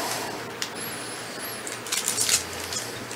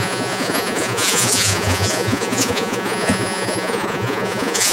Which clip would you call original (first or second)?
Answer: first